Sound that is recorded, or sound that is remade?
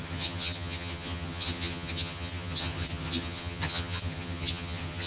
remade